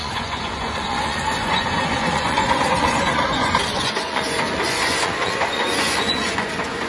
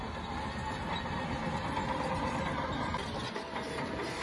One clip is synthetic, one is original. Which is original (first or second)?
second